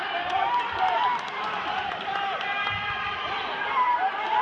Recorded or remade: remade